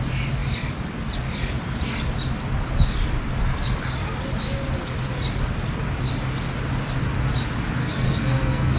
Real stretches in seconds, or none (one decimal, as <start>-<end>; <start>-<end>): 0.0-7.8